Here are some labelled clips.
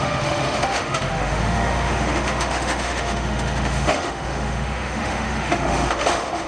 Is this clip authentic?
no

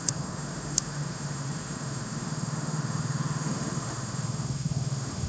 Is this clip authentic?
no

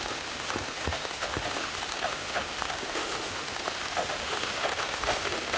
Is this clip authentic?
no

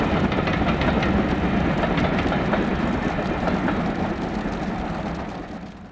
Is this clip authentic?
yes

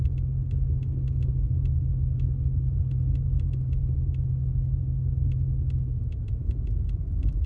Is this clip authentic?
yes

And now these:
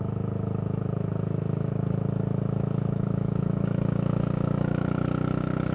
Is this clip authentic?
no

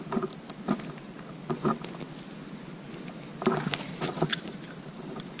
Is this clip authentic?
yes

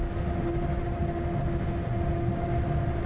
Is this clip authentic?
yes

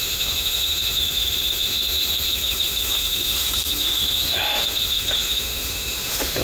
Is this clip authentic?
no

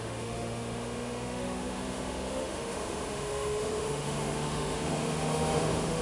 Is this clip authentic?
no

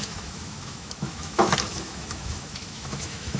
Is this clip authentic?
no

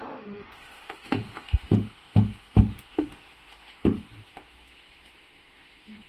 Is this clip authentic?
no